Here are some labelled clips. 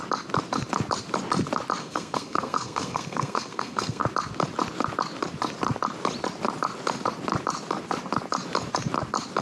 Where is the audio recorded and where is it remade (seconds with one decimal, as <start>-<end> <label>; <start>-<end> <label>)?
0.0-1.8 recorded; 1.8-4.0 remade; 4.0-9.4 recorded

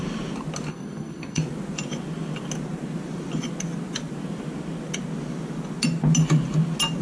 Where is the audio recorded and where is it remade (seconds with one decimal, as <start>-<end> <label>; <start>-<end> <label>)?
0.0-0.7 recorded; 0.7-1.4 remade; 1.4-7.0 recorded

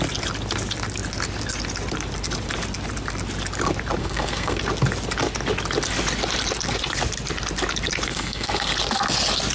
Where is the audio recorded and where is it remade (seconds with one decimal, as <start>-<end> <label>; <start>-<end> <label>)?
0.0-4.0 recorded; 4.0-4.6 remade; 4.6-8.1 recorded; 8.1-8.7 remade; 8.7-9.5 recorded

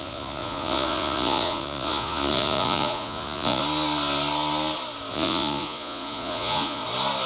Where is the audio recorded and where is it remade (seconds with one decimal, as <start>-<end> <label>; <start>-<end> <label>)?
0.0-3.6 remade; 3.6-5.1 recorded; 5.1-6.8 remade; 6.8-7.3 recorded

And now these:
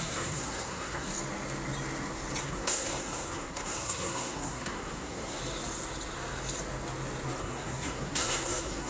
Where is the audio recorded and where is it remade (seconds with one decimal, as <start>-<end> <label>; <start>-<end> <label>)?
0.0-1.1 remade; 1.1-2.4 recorded; 2.4-5.4 remade; 5.4-7.4 recorded; 7.4-8.9 remade

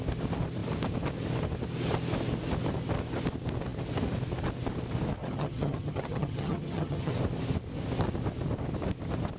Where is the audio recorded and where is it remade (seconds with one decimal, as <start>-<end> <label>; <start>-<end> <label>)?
0.0-5.2 recorded; 5.2-7.1 remade; 7.1-9.4 recorded

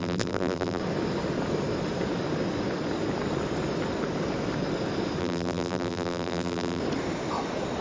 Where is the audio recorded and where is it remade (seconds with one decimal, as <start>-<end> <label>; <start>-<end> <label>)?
0.0-0.8 remade; 0.8-5.2 recorded; 5.2-6.8 remade; 6.8-7.8 recorded